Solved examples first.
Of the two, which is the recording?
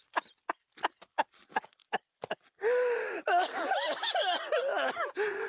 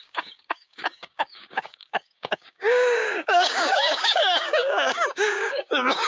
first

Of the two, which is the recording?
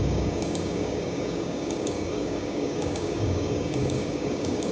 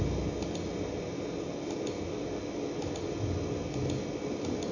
second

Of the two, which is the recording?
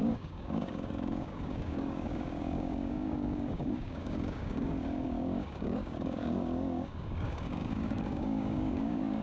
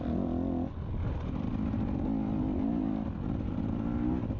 second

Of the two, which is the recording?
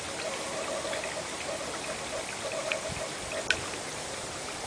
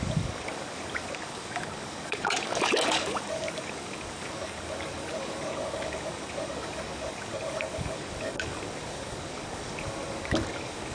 first